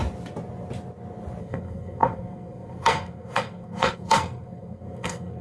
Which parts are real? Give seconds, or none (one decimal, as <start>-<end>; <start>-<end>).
0.0-1.4